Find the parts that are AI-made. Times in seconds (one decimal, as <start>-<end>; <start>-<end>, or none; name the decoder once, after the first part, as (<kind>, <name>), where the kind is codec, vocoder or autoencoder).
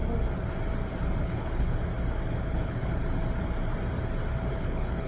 1.2-1.9 (codec, HILCodec); 2.4-3.0; 4.5-5.1